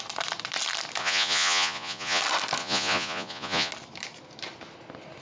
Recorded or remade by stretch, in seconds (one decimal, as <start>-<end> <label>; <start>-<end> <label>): 0.0-1.0 recorded; 1.0-2.2 remade; 2.2-2.6 recorded; 2.6-3.7 remade; 3.7-5.2 recorded